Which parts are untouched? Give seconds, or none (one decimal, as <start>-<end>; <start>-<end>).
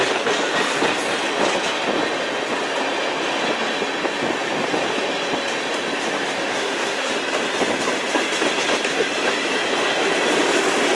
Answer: 0.0-6.5; 7.1-11.0